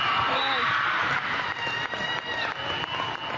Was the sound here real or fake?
real